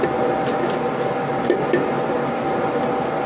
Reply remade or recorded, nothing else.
recorded